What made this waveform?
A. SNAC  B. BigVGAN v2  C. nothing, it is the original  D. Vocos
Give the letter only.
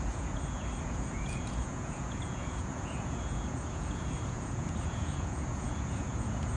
D